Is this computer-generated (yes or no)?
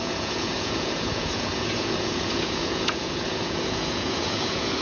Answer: yes